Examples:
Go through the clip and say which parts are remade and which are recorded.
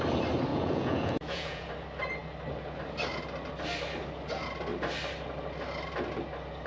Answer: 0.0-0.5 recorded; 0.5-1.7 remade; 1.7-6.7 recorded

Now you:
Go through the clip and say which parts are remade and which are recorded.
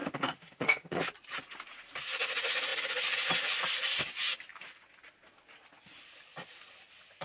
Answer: 0.0-1.0 remade; 1.0-7.2 recorded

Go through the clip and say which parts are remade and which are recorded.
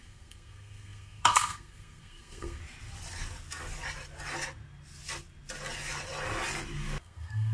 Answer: 0.0-2.6 remade; 2.6-7.0 recorded; 7.0-7.5 remade